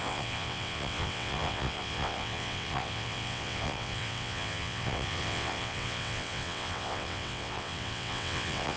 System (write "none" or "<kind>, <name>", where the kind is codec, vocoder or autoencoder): vocoder, WaveNeXt